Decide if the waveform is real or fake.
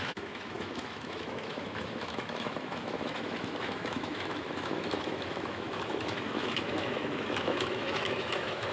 fake